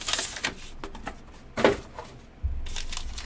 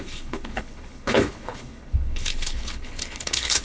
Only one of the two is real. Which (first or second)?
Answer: first